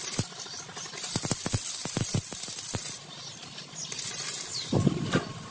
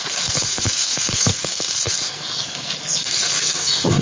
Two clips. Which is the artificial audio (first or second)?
second